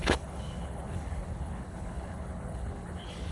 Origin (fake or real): fake